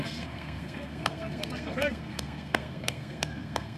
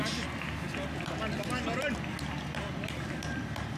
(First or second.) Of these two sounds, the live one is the second